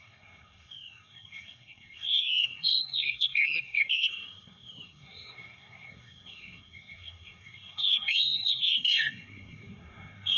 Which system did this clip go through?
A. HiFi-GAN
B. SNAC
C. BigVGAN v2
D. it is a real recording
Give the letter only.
B